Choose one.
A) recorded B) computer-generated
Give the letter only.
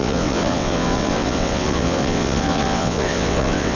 B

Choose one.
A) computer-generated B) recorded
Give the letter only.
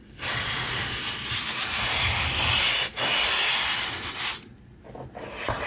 B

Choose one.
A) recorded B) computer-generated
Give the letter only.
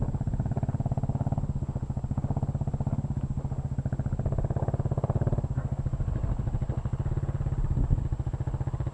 A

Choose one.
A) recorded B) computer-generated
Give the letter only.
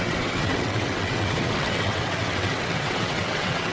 B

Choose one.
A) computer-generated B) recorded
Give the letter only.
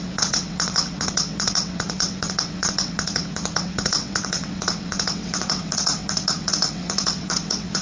A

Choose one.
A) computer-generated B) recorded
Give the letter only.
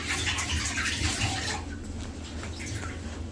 B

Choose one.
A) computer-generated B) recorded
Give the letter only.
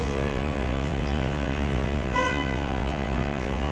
A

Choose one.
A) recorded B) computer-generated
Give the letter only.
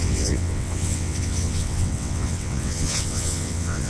B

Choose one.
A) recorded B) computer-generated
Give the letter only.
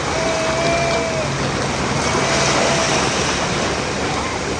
A